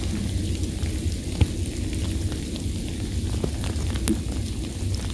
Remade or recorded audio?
recorded